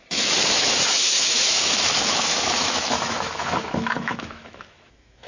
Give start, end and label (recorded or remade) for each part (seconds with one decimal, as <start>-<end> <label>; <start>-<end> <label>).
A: 0.0-5.3 remade